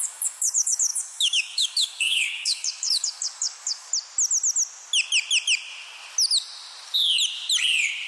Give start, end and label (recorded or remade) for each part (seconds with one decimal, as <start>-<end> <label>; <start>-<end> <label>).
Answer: 0.0-3.9 remade; 3.9-8.1 recorded